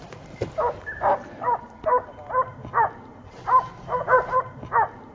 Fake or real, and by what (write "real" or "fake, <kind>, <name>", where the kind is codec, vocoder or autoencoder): real